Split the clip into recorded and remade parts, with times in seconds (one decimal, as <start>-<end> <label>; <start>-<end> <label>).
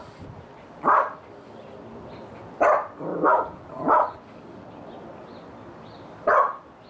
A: 0.0-3.1 recorded; 3.1-4.2 remade; 4.2-6.9 recorded